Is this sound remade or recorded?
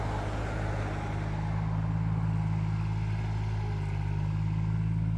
recorded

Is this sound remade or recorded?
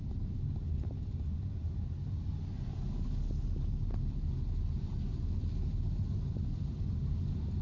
recorded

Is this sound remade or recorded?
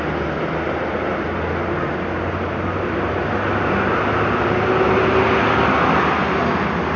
recorded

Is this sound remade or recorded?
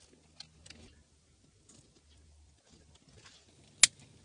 recorded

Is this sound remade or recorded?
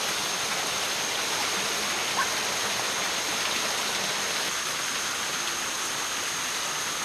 recorded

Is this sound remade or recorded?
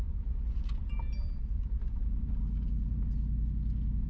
recorded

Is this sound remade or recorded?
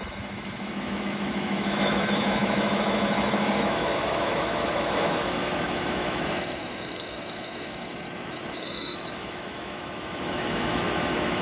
remade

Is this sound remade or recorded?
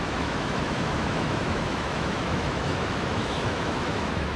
remade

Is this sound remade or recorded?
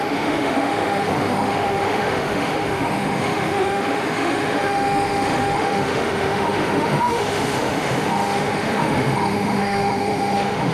remade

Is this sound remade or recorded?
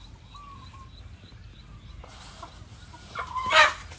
recorded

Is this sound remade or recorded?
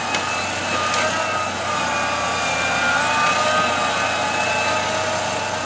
recorded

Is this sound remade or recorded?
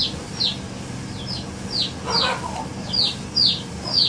recorded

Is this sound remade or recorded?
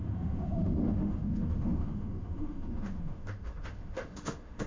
remade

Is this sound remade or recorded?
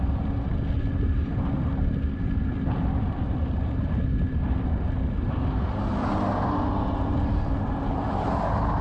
recorded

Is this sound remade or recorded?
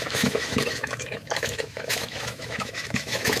remade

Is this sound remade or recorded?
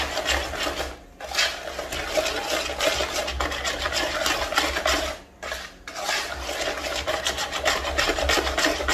recorded